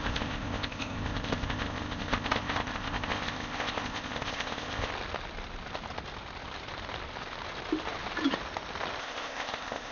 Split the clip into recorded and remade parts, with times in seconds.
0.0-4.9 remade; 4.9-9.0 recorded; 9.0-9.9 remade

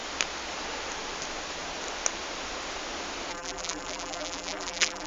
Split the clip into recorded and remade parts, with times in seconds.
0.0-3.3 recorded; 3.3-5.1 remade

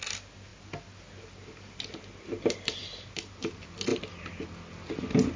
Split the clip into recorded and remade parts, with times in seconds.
0.0-5.4 recorded

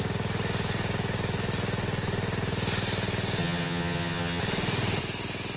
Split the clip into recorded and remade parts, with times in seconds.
0.0-3.4 recorded; 3.4-4.4 remade; 4.4-5.6 recorded

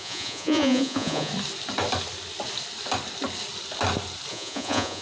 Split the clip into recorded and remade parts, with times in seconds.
0.0-1.3 remade; 1.3-4.3 recorded; 4.3-5.0 remade

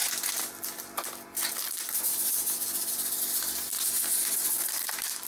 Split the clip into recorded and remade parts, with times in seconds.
0.0-5.3 recorded